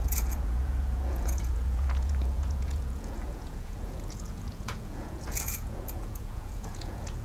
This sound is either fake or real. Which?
fake